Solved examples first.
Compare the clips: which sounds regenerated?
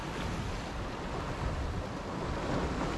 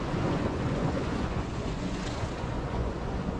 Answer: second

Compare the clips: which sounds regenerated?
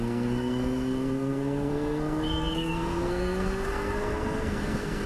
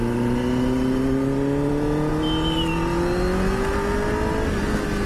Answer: first